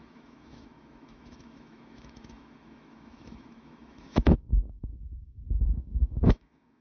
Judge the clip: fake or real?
fake